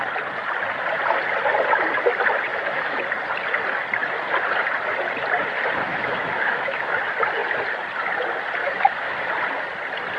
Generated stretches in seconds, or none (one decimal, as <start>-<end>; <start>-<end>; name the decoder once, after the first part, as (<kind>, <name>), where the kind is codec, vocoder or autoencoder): 2.5-3.0 (autoencoder, DAC-VAE); 5.9-7.0; 8.6-9.3